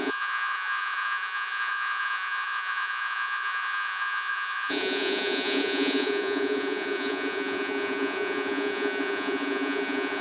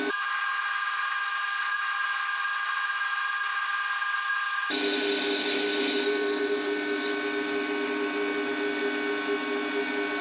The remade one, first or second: first